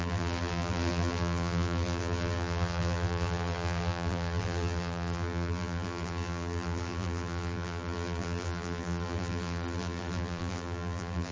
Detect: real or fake fake